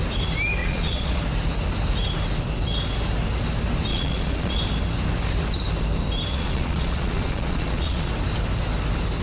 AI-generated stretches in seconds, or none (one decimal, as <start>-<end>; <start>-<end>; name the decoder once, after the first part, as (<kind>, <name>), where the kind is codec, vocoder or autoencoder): 0.6-1.2 (vocoder, Vocos); 3.9-4.6; 6.3-8.1